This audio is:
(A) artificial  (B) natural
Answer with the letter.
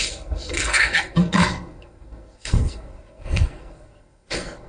A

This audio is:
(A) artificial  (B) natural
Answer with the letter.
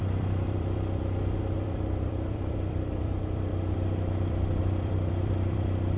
A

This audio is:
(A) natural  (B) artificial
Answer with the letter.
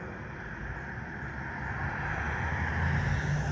A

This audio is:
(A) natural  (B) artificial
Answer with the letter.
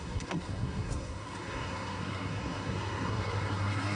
B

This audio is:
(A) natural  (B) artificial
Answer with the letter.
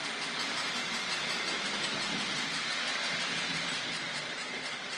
A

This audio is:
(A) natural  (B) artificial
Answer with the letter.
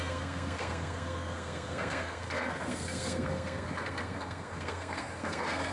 B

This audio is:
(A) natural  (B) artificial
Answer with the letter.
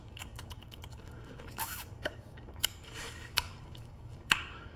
B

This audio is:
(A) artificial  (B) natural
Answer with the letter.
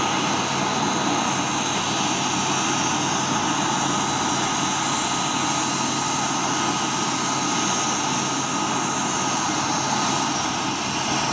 B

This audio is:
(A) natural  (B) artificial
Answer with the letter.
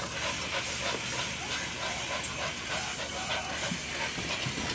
A